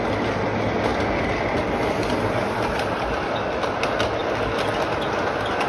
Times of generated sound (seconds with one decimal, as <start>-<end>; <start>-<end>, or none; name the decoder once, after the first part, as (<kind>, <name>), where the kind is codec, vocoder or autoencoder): none